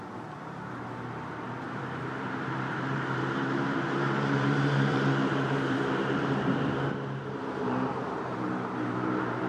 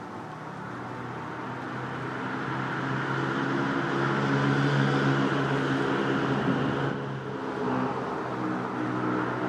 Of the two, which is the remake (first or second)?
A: first